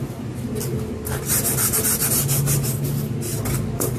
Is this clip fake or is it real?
real